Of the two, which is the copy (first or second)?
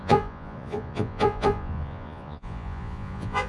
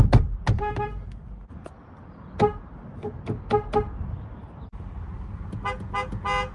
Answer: first